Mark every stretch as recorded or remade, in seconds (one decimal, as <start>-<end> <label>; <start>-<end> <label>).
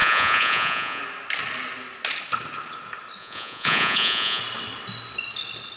0.0-1.0 remade; 1.0-3.2 recorded; 3.2-4.4 remade; 4.4-5.8 recorded